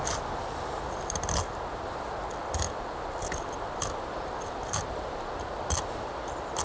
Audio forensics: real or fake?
real